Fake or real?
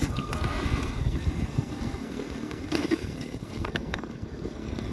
fake